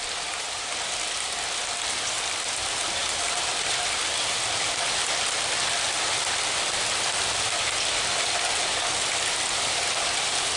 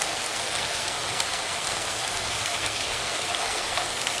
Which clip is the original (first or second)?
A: first